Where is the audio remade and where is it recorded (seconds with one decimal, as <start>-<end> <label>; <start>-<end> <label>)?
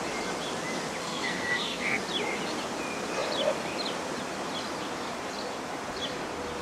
0.0-1.0 recorded; 1.0-2.0 remade; 2.0-6.6 recorded